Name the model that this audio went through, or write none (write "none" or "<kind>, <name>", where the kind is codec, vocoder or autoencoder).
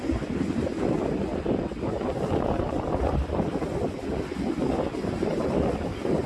none